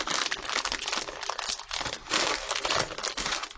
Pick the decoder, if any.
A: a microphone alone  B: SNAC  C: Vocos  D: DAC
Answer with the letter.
A